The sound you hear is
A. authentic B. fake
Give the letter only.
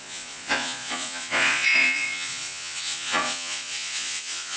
B